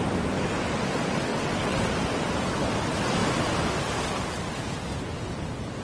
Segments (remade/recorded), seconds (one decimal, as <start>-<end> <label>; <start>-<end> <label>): 0.0-1.3 recorded; 1.3-1.9 remade; 1.9-5.8 recorded